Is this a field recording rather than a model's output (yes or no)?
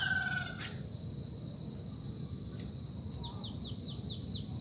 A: yes